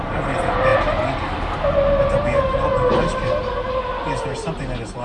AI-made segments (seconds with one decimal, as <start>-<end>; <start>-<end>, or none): none